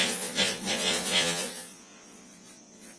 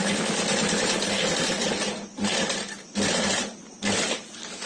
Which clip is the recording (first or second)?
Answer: second